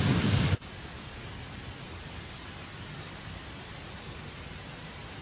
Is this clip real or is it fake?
fake